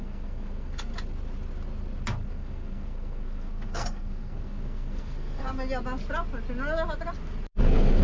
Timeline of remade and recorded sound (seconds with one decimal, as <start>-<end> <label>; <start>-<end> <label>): 0.0-0.9 remade; 0.9-2.3 recorded; 2.3-5.4 remade; 5.4-7.6 recorded; 7.6-8.0 remade